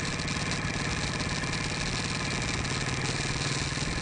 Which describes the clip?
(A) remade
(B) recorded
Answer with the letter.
B